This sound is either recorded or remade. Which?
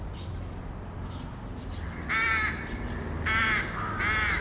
recorded